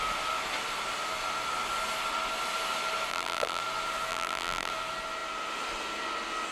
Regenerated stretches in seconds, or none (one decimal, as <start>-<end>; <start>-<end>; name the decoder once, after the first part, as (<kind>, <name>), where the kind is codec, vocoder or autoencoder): 3.1-3.6 (vocoder, BigVGAN v2); 4.1-4.7